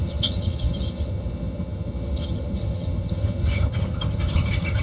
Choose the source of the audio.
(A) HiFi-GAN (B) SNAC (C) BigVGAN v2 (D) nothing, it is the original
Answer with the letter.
A